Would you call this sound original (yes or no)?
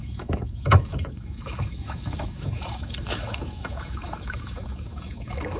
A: no